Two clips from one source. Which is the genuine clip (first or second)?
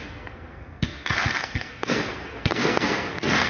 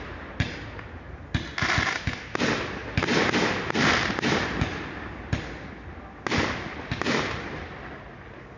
second